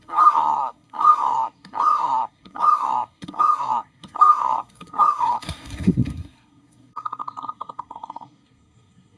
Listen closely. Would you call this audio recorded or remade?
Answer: remade